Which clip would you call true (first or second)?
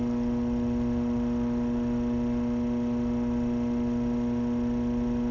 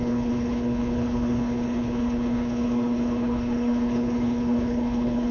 first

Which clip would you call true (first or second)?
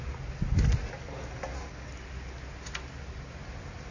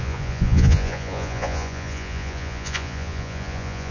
first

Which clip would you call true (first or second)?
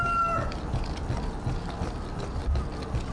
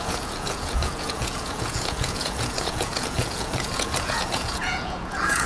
first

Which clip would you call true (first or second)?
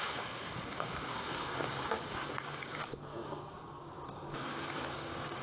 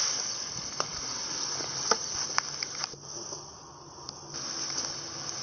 second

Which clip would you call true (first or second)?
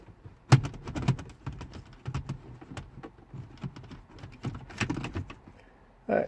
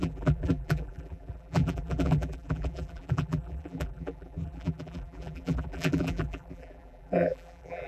first